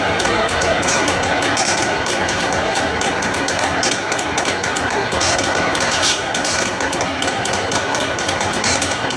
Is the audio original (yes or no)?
no